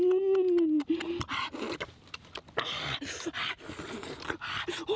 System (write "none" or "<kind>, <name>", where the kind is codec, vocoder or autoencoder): none